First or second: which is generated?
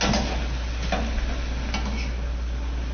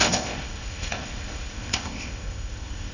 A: second